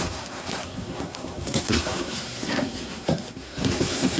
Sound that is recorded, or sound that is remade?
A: remade